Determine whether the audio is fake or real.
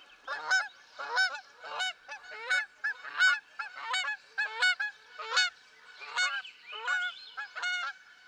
real